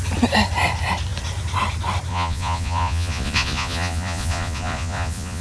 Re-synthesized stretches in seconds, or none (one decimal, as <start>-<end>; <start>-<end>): 2.1-5.4

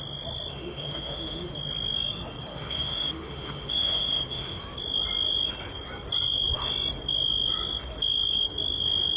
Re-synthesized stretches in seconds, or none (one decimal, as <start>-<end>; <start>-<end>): 0.5-1.5; 2.5-4.6